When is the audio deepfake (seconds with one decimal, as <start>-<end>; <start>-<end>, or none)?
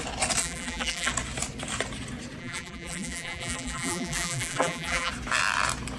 0.4-1.1; 2.4-5.1